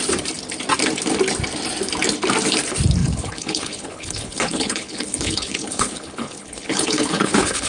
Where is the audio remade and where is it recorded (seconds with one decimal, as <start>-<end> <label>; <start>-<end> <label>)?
0.0-3.0 recorded; 3.0-7.7 remade